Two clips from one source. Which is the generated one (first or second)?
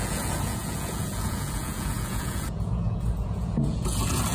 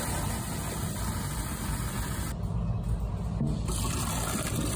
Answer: first